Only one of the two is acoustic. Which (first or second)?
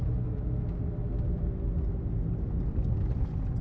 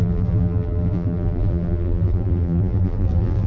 first